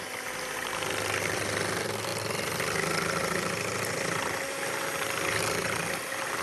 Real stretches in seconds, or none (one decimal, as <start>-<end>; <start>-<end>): 0.0-6.4